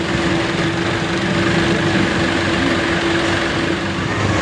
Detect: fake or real real